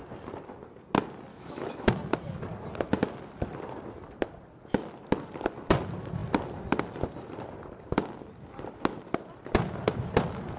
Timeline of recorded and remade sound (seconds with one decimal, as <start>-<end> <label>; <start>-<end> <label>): 0.0-1.3 recorded; 1.3-1.9 remade; 1.9-10.6 recorded